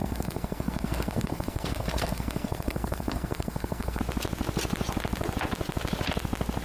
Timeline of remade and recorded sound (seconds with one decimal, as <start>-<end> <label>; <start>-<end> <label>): 0.0-4.0 remade; 4.0-6.6 recorded